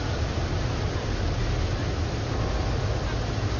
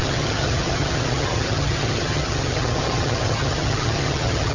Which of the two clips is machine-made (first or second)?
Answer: second